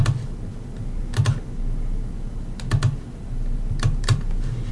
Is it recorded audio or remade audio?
recorded